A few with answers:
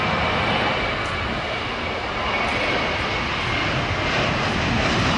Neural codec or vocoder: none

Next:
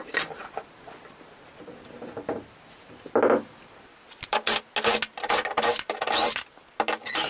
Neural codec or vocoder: none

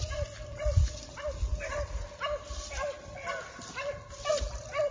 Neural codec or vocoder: none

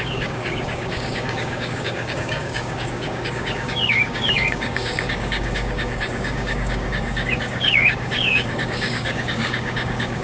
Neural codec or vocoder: codec, DAC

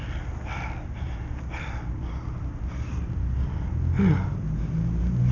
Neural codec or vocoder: none